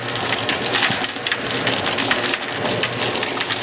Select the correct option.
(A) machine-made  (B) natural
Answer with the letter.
B